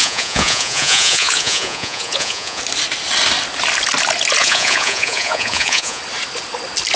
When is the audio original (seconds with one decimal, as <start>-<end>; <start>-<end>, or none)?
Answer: 2.6-4.4; 6.0-7.0